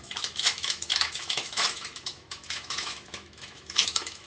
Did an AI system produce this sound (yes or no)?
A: yes